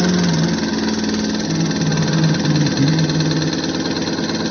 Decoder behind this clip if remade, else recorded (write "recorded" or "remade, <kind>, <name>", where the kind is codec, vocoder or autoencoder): recorded